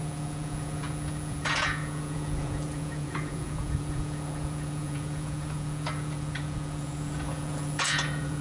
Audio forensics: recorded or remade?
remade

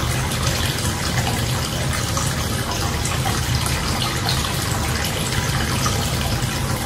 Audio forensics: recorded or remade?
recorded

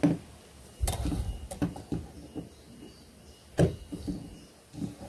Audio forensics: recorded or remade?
recorded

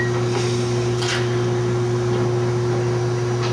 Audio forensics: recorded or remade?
recorded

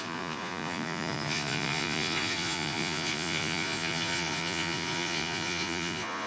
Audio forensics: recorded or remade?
remade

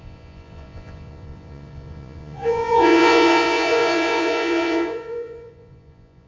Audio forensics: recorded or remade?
remade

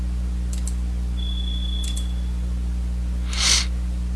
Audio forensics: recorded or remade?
recorded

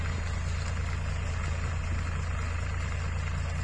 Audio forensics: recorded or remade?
recorded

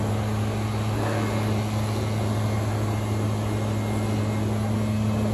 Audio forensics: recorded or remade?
recorded